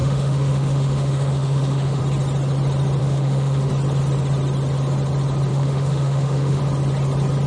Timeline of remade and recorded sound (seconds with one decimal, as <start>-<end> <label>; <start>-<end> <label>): 0.0-2.0 remade; 2.0-3.0 recorded; 3.0-3.7 remade; 3.7-5.5 recorded; 5.5-6.6 remade; 6.6-7.5 recorded